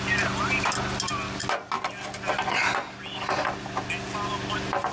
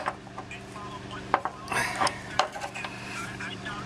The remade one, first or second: second